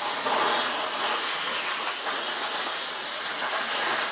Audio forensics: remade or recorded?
remade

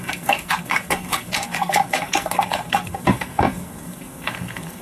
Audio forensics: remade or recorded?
remade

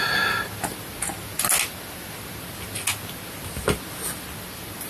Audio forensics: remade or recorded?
recorded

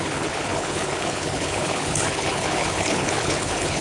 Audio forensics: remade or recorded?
remade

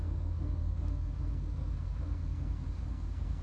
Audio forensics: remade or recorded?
remade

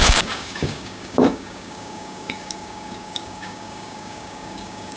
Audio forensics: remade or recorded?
remade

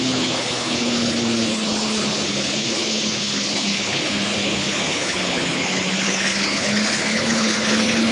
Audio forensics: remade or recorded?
remade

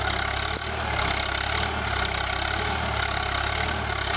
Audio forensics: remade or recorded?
recorded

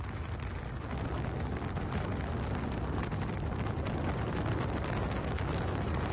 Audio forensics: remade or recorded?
recorded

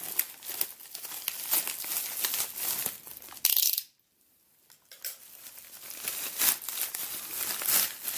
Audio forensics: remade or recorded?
recorded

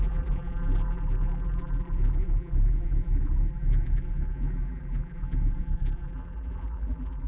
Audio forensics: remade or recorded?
remade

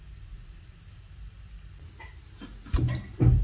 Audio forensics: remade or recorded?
recorded